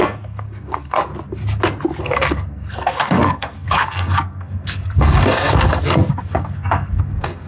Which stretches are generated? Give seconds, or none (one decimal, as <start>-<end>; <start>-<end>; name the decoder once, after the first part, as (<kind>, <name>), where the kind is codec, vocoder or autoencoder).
0.0-1.1 (codec, SNAC); 2.0-7.5